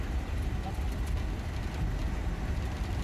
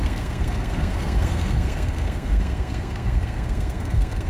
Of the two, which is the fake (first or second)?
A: second